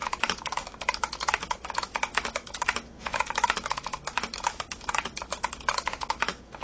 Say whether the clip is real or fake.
fake